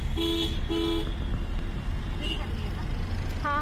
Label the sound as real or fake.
real